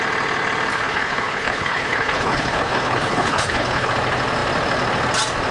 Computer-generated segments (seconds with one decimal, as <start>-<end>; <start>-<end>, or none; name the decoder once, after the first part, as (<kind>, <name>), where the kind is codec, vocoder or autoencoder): 0.7-3.9 (codec, HILCodec)